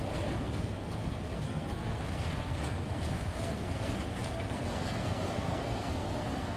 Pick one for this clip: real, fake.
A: fake